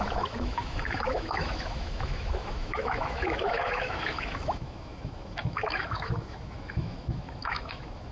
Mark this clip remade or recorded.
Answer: remade